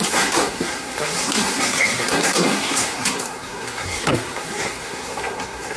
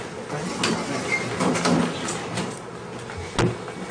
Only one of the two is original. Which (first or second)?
second